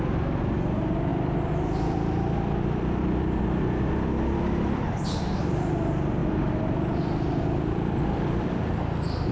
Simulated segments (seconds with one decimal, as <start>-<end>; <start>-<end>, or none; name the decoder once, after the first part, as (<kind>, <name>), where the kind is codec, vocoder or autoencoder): 1.1-3.4 (vocoder, BigVGAN v2); 6.2-9.3